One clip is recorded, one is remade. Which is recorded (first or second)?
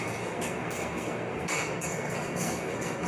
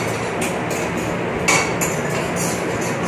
second